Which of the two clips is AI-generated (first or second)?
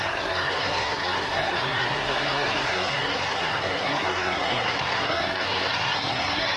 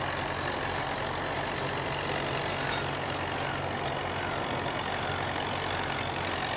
first